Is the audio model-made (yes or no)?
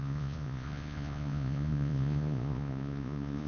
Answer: yes